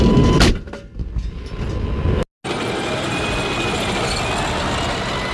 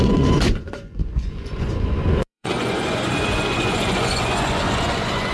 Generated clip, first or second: second